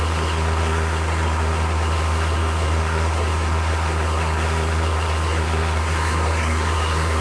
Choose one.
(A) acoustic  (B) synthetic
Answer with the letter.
B